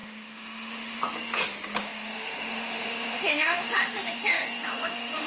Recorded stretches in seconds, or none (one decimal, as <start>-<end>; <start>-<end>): 1.0-1.8